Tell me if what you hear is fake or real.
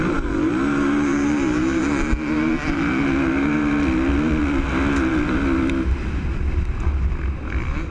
real